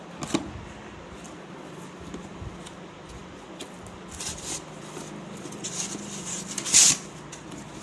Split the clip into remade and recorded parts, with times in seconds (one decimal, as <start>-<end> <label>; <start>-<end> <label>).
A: 0.0-7.8 recorded